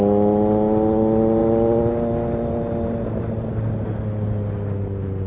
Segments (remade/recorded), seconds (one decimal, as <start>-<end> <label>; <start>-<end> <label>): 0.0-5.3 recorded